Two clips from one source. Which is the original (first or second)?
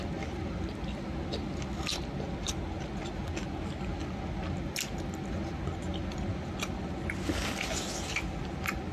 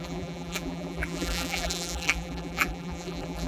first